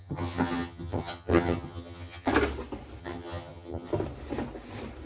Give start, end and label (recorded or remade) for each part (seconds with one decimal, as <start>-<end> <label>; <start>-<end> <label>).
0.0-2.3 remade; 2.3-3.0 recorded; 3.0-3.9 remade; 3.9-5.1 recorded